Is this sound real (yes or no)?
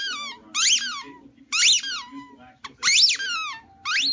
yes